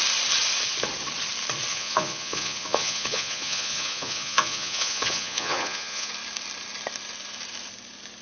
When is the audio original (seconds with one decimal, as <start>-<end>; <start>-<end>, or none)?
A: 0.0-1.7; 6.1-8.2